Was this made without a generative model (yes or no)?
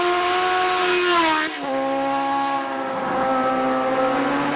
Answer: yes